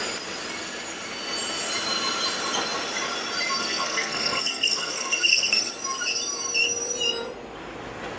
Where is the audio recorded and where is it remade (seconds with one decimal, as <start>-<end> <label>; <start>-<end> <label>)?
0.0-3.6 recorded; 3.6-5.7 remade; 5.7-8.2 recorded